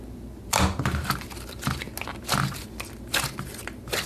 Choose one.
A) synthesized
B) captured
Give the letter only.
B